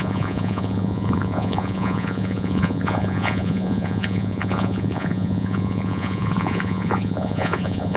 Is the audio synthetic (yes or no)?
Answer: yes